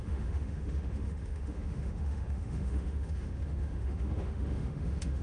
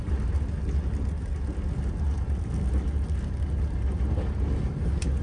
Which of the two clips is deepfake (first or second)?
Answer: first